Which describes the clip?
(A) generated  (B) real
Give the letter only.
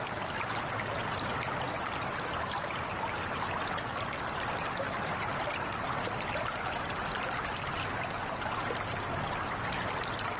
B